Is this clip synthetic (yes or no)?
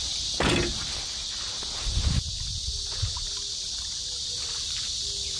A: no